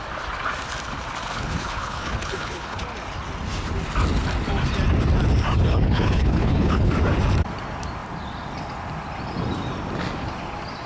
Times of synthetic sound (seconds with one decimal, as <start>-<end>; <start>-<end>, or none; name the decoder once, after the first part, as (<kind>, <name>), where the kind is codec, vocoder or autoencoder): 1.3-2.8 (codec, HILCodec); 5.7-6.9